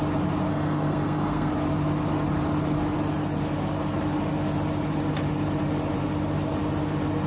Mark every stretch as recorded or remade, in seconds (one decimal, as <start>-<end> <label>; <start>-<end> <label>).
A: 0.0-0.5 recorded; 0.5-1.5 remade; 1.5-7.3 recorded